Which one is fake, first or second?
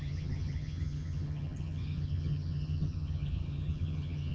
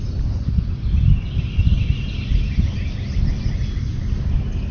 first